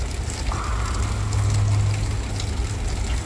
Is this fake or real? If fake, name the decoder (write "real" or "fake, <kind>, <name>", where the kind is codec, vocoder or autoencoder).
real